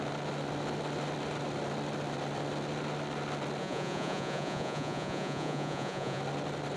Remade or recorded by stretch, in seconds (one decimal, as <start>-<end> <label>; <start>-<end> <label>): 0.0-3.6 recorded; 3.6-6.2 remade; 6.2-6.8 recorded